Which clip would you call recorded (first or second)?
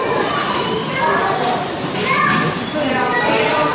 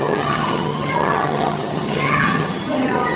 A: first